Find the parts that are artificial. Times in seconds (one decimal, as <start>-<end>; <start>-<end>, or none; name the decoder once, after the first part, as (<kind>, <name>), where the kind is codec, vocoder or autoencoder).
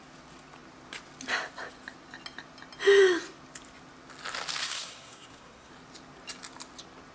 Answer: 4.6-5.7 (codec, SNAC)